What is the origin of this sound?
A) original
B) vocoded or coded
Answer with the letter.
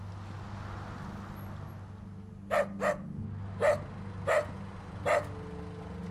A